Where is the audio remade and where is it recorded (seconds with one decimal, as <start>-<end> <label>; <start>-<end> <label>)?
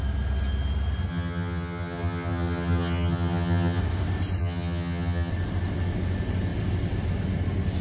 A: 0.0-1.1 recorded; 1.1-3.8 remade; 3.8-4.4 recorded; 4.4-5.3 remade; 5.3-7.8 recorded